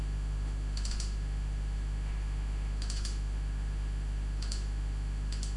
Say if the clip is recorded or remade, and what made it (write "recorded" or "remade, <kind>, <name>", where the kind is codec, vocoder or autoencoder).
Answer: remade, autoencoder, DAC-VAE